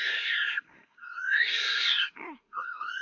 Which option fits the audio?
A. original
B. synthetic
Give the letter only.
B